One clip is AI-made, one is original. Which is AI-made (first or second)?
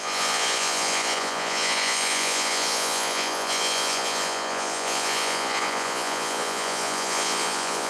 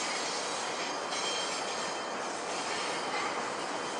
first